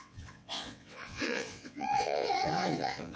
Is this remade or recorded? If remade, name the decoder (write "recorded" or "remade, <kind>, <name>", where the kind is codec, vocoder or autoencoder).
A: remade, vocoder, WaveNeXt